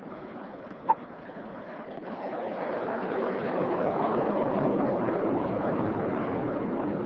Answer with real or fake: fake